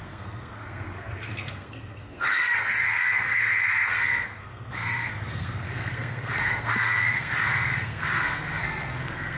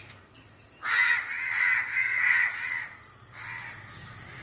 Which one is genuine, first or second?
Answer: second